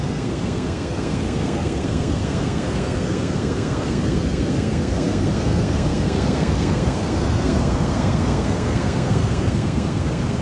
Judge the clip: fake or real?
fake